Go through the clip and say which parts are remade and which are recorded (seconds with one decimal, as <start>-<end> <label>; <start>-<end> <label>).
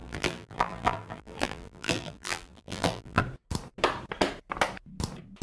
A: 0.0-3.2 remade; 3.2-5.4 recorded